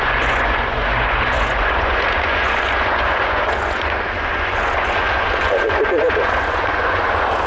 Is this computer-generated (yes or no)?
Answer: yes